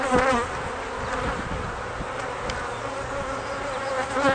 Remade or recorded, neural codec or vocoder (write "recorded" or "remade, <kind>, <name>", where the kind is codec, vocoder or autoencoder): recorded